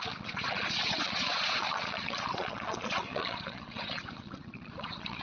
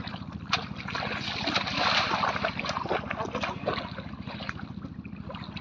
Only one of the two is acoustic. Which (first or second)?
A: second